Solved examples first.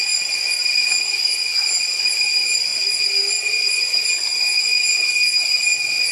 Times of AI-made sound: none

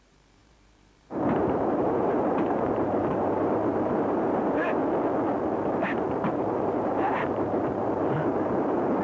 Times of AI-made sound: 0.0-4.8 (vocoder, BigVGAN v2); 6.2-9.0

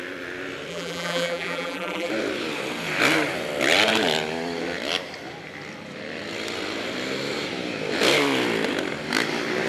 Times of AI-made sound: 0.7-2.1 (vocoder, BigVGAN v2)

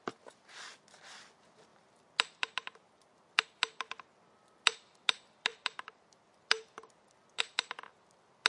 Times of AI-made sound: 5.5-7.4 (vocoder, BigVGAN v2)